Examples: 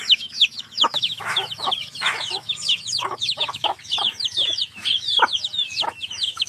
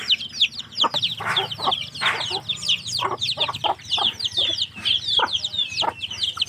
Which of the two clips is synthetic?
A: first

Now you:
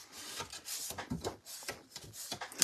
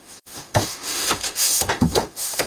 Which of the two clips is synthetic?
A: second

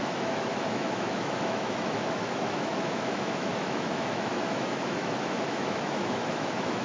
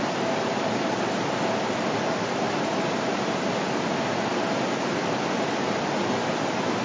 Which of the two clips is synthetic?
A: first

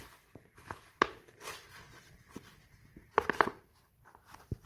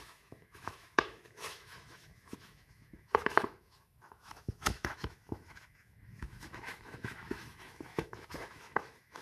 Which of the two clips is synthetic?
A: second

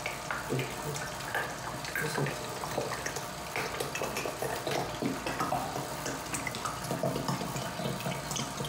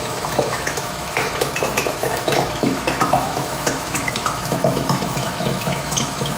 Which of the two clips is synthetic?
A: second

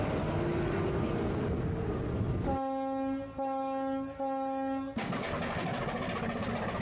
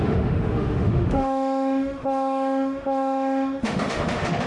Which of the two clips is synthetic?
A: second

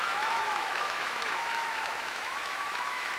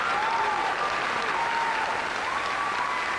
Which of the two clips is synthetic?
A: first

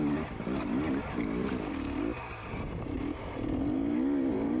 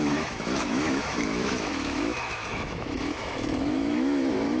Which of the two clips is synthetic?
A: second